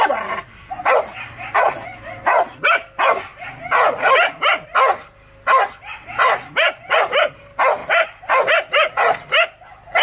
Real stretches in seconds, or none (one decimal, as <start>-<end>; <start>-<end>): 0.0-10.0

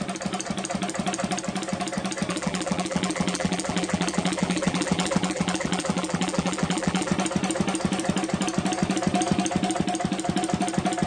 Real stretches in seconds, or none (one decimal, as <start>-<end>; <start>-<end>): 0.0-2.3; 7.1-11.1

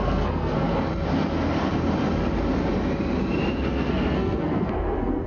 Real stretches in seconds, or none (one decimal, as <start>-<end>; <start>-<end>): 0.7-3.6

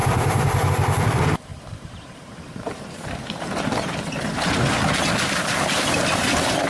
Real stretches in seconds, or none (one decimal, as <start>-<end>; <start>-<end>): 0.7-1.5; 4.5-6.7

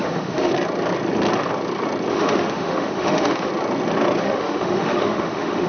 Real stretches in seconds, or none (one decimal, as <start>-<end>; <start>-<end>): 0.5-2.1; 3.5-4.2